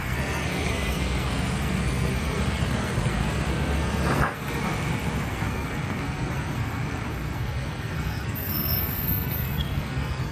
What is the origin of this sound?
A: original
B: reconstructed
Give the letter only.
B